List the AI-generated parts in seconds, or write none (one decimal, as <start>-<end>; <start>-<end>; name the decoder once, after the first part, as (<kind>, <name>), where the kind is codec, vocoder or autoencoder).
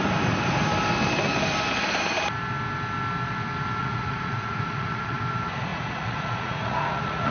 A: 3.8-5.2 (vocoder, Vocos); 5.7-7.3